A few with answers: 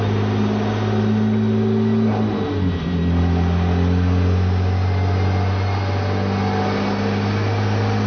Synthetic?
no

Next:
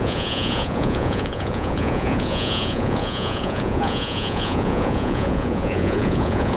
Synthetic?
yes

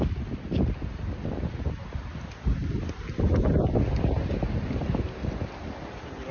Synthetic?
no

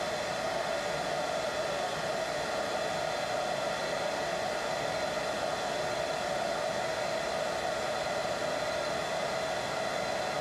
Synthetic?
no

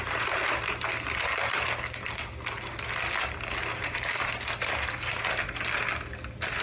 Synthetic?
no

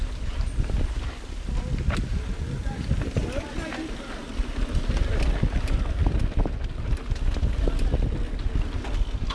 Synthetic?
no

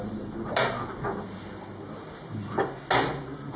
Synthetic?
no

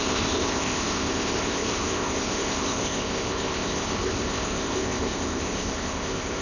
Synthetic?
yes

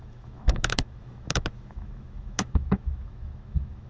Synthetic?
yes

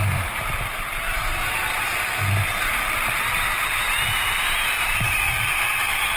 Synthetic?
no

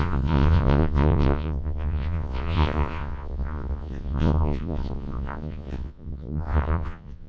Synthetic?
yes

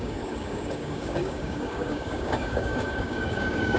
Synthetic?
yes